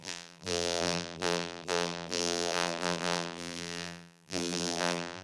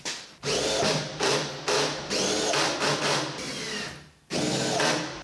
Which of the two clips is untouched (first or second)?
second